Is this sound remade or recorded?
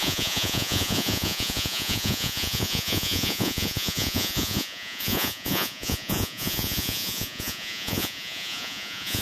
remade